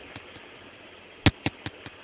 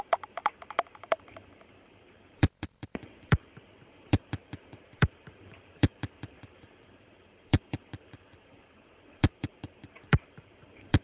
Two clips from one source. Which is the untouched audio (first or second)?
first